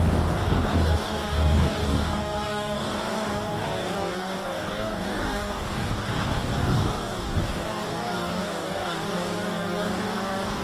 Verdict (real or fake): fake